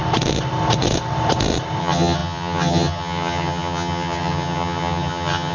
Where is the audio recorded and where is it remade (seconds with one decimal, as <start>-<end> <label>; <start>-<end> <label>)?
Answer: 0.0-1.8 recorded; 1.8-5.5 remade